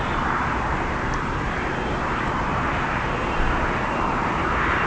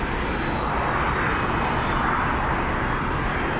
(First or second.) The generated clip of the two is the first